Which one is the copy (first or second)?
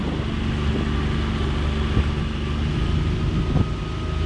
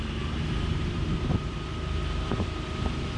second